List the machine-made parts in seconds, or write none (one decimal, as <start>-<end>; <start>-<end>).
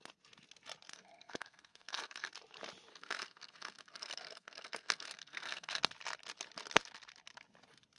0.9-2.3; 2.9-5.8